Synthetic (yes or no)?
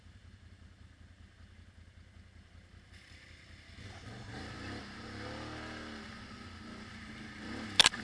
no